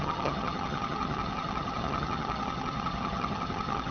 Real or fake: fake